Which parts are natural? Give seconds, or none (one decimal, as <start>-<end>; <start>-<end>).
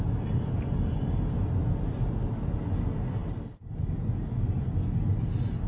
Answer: 0.0-5.7